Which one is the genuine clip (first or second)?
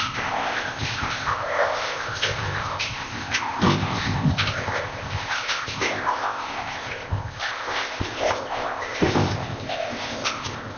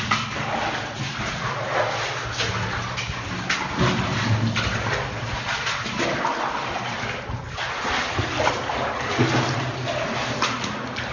second